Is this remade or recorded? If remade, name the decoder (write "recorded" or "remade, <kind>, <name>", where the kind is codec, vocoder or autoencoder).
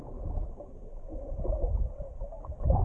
recorded